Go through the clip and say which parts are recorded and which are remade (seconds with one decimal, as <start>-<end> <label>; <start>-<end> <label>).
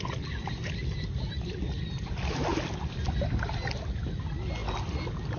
0.0-5.4 recorded